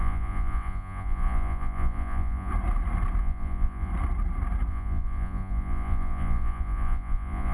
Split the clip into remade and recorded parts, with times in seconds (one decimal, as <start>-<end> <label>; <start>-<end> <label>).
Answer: 0.0-2.5 remade; 2.5-3.2 recorded; 3.2-3.9 remade; 3.9-4.7 recorded; 4.7-7.5 remade